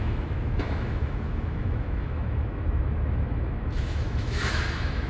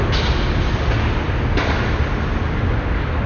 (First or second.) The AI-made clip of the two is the first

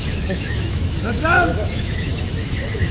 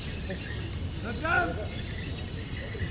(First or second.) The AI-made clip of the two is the first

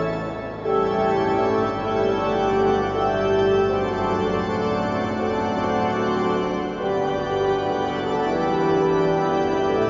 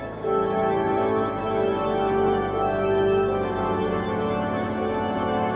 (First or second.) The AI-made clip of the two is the second